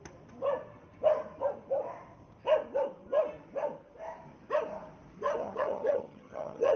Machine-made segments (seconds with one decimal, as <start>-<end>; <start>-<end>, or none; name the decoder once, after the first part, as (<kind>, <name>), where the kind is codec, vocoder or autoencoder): 5.4-6.8 (vocoder, HiFi-GAN)